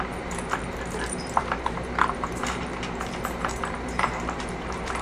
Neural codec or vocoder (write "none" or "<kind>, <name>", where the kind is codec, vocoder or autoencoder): vocoder, BigVGAN v2